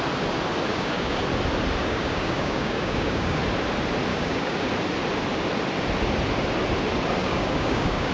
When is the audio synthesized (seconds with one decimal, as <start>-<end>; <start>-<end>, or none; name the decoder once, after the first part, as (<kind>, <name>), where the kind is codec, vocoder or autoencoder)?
0.7-1.2 (codec, DAC); 1.8-3.4; 4.1-4.7; 7.2-8.1